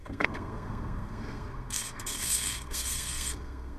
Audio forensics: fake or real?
fake